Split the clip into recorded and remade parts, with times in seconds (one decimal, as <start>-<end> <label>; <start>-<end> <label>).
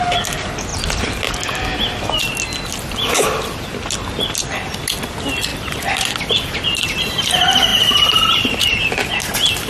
0.0-5.5 recorded; 5.5-6.1 remade; 6.1-7.7 recorded; 7.7-8.9 remade; 8.9-9.7 recorded